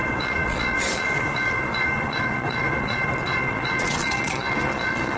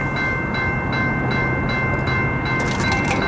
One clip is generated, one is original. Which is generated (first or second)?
first